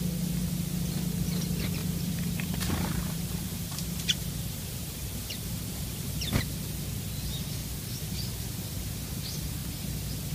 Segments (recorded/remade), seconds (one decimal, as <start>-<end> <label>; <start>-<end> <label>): 0.0-1.8 recorded; 1.8-6.4 remade; 6.4-10.3 recorded